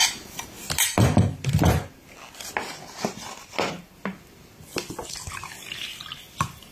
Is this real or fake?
real